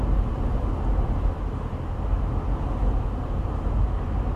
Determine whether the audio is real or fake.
real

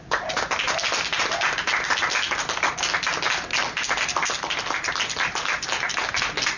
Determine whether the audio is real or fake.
real